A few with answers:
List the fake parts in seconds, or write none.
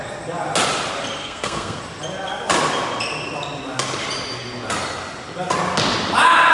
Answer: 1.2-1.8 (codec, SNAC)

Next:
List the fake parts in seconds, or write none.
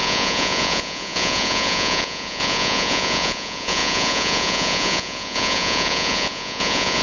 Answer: 0.0-7.0 (vocoder, Vocos)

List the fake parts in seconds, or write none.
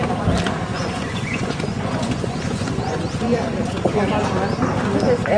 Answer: 0.7-3.9 (vocoder, Vocos)